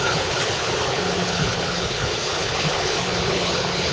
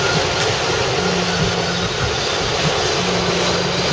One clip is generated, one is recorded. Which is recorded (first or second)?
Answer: second